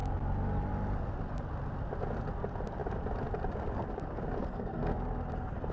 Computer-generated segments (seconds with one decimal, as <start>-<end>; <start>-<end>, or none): 4.4-5.0

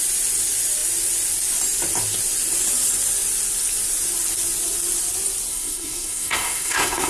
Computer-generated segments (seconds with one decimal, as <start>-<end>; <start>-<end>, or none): 5.5-7.1

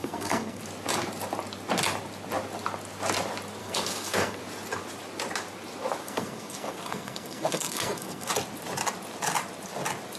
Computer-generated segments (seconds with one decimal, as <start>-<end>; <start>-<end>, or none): 0.0-0.6; 3.6-4.4; 6.0-8.3

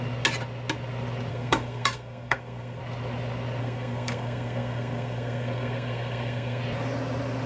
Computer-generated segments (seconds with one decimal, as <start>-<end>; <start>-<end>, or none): 1.3-2.8; 3.6-6.6